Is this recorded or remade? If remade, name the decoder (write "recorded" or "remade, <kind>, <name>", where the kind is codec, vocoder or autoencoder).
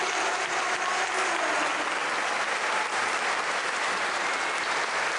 recorded